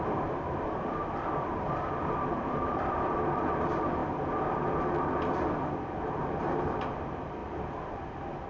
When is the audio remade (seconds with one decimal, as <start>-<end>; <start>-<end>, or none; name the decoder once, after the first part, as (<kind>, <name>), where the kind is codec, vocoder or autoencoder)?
0.0-4.0 (vocoder, BigVGAN v2); 6.0-7.4; 7.9-8.5